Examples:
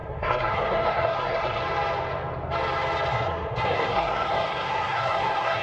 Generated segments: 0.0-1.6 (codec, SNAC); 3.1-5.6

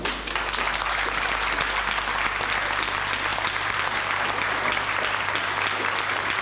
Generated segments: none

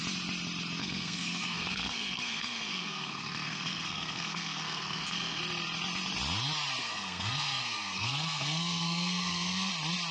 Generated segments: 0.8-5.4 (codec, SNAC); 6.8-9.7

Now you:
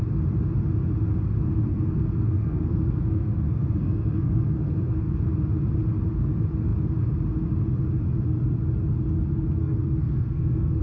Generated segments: 1.7-5.2 (codec, SNAC); 9.6-10.8